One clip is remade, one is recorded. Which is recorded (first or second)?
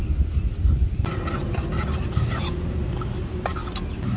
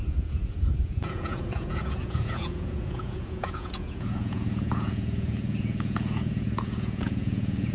first